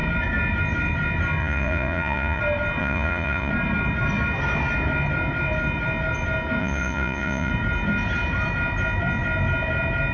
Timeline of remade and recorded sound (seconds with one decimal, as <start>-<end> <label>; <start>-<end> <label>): 0.0-1.4 recorded; 1.4-2.4 remade; 2.4-2.8 recorded; 2.8-3.5 remade; 3.5-6.6 recorded; 6.6-7.5 remade; 7.5-10.1 recorded